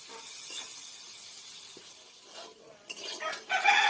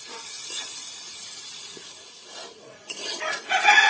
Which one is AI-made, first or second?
second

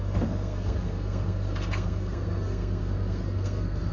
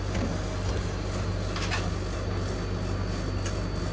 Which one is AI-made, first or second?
first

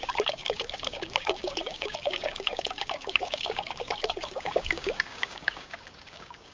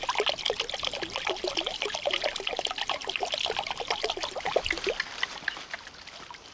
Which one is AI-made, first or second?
first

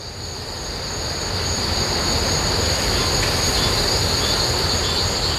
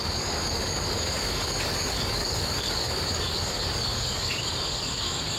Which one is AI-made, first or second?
second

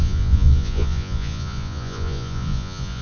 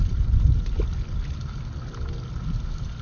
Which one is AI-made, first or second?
first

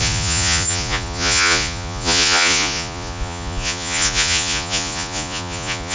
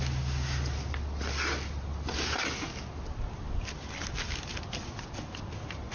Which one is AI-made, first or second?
first